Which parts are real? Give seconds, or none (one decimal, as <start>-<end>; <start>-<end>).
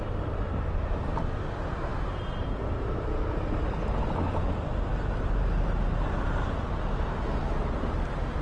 0.0-8.4